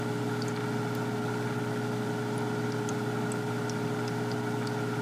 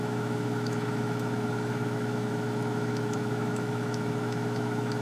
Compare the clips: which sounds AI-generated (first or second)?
second